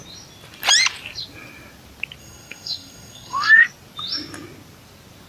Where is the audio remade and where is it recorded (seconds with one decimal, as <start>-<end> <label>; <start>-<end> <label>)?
0.0-2.2 recorded; 2.2-3.6 remade; 3.6-5.3 recorded